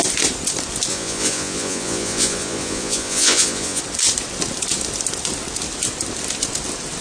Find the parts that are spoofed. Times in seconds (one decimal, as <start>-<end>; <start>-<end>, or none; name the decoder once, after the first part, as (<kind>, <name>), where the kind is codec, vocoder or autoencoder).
0.9-3.8 (vocoder, Vocos)